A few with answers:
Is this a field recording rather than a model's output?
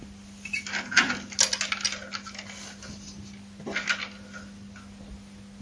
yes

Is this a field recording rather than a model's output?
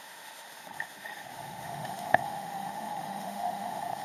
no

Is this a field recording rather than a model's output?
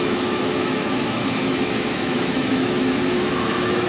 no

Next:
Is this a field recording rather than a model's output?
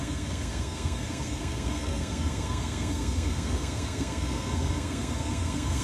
no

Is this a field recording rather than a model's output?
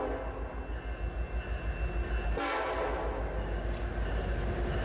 yes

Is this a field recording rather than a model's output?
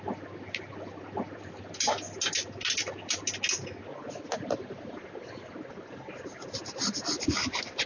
yes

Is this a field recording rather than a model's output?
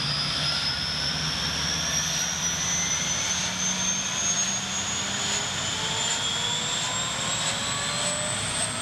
yes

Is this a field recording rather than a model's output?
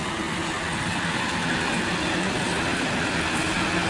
yes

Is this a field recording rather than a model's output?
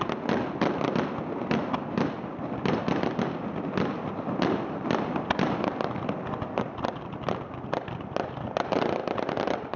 yes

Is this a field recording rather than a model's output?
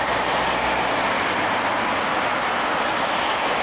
yes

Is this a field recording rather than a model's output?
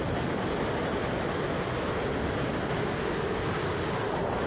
yes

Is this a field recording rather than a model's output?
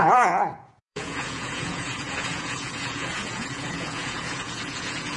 no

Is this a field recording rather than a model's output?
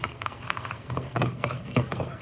no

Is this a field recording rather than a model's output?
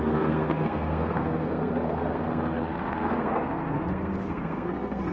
no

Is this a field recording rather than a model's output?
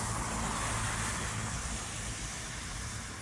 yes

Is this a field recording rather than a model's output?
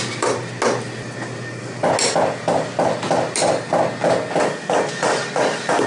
yes